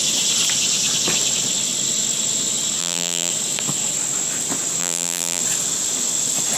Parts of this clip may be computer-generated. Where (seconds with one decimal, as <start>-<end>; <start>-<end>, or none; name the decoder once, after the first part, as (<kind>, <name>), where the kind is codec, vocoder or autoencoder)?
2.8-3.3 (vocoder, BigVGAN v2); 4.8-5.4